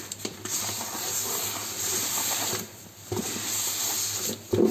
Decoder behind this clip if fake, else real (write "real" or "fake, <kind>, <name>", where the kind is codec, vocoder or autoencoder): fake, vocoder, BigVGAN v2